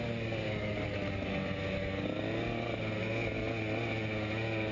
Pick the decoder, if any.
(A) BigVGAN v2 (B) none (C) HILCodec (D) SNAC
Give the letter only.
B